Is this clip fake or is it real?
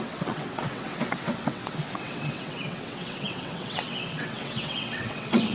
fake